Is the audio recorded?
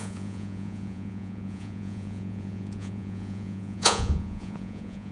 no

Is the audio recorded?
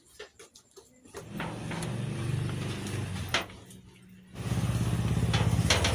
yes